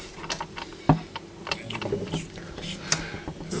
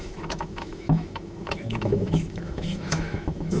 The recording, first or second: first